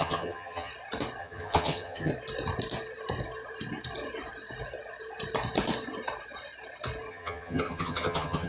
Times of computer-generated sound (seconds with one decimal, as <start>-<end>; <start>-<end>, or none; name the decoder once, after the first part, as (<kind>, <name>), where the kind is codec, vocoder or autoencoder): 0.0-0.7 (vocoder, HiFi-GAN); 1.2-2.1; 7.1-8.5